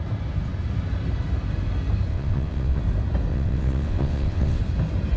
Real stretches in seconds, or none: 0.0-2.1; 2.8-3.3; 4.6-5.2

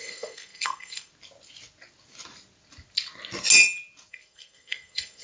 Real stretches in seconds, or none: 1.1-4.1

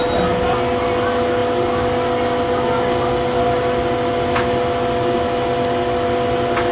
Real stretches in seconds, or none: 0.0-6.7

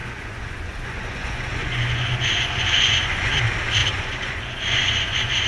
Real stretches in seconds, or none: 3.3-3.8

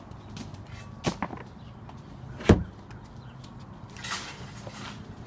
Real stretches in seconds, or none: 0.0-0.5; 1.0-5.3

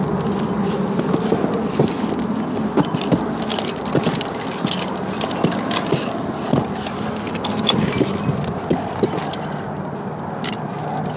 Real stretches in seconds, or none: 0.0-11.2

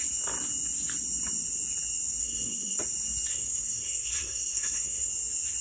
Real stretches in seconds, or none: 0.0-2.2; 2.8-3.3; 5.1-5.6